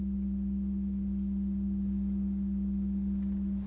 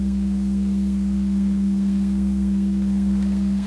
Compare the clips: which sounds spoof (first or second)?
second